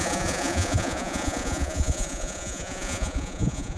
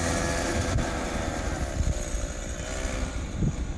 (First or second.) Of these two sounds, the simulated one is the first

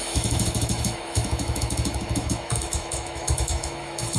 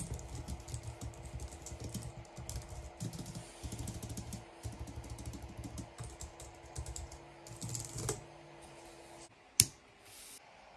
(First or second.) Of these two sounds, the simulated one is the first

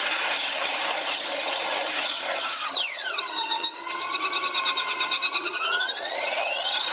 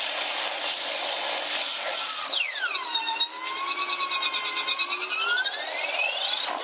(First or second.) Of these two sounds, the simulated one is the first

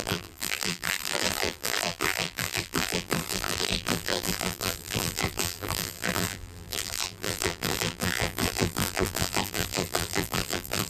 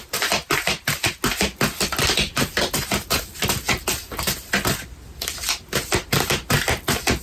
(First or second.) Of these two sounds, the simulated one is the first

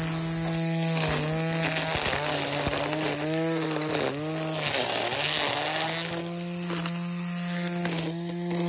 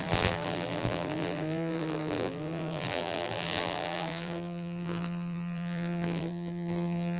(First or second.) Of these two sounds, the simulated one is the second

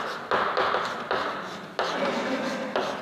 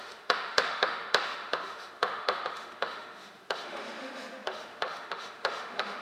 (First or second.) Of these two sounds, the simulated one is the second